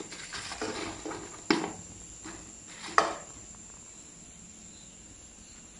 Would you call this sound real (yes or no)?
yes